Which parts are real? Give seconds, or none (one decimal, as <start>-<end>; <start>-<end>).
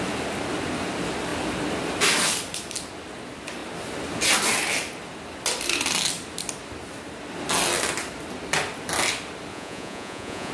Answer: 0.0-9.5